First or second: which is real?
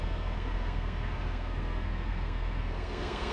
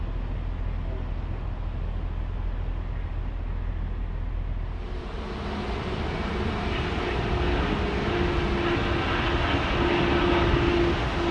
second